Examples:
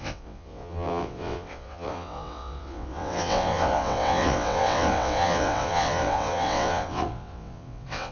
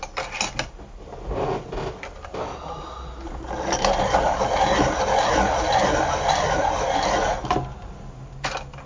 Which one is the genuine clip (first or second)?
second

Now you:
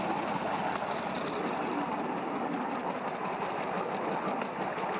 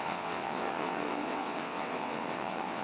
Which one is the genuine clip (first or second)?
first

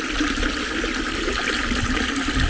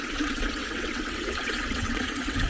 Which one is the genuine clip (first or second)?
first